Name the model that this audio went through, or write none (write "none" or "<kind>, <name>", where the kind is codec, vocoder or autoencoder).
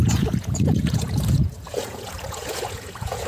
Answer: vocoder, Vocos